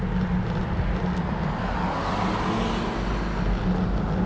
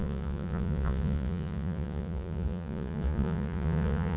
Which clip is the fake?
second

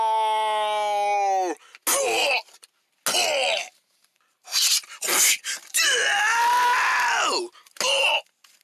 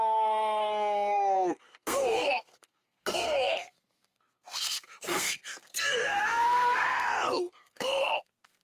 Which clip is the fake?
second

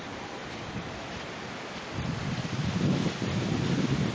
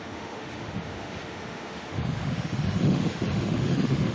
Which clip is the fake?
second